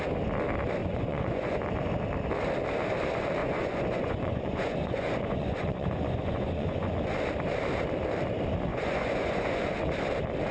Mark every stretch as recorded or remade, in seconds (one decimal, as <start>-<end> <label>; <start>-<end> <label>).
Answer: 0.0-0.8 recorded; 0.8-1.6 remade; 1.6-3.4 recorded; 3.4-6.9 remade; 6.9-8.7 recorded; 8.7-9.6 remade; 9.6-10.5 recorded